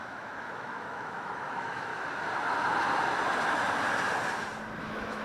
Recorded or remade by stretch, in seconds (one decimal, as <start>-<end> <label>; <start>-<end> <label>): 0.0-1.9 remade; 1.9-4.8 recorded; 4.8-5.2 remade